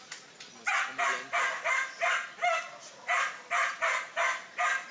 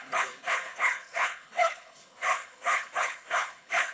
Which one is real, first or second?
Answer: first